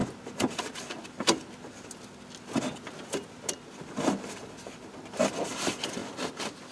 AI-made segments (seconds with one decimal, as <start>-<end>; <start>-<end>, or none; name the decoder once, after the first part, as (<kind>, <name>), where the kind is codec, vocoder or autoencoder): none